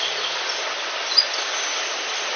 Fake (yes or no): no